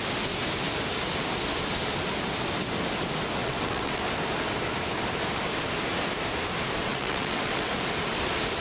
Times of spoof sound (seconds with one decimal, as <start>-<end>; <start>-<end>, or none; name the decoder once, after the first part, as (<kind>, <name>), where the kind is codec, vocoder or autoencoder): 3.4-4.0 (vocoder, WaveNeXt); 6.9-7.7